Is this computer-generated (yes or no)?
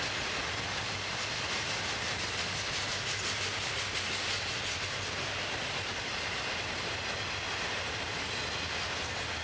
no